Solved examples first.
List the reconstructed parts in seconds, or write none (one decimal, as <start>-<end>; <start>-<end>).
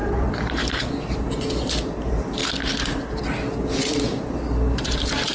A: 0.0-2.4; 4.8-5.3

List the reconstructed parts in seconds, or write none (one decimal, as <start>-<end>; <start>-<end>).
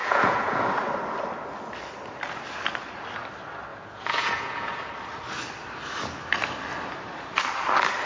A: 0.0-0.6; 3.7-4.9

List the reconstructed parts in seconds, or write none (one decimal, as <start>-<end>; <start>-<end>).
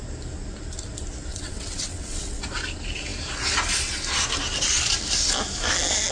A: 1.3-2.4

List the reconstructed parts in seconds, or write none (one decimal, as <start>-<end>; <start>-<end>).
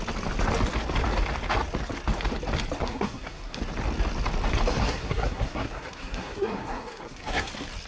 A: 2.8-3.6; 4.8-7.5